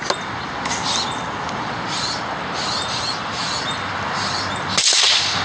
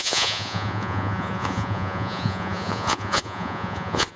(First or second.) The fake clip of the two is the second